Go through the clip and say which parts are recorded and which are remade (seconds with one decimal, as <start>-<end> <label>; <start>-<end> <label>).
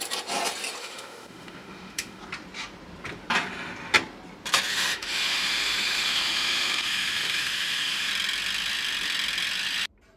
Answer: 0.0-0.8 recorded; 0.8-2.2 remade; 2.2-4.7 recorded; 4.7-8.1 remade; 8.1-10.2 recorded